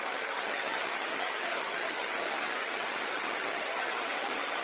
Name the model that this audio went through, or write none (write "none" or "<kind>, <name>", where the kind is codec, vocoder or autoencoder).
vocoder, HiFi-GAN